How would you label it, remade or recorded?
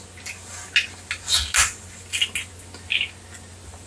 recorded